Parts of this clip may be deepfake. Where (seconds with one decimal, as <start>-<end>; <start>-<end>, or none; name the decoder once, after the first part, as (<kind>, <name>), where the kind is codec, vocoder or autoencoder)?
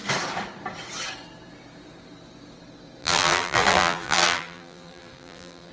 3.0-5.7 (vocoder, BigVGAN v2)